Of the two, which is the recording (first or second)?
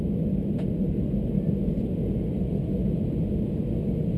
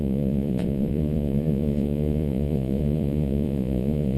first